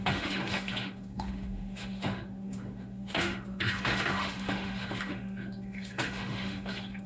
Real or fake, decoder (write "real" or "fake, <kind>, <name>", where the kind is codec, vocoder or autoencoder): fake, autoencoder, DAC-VAE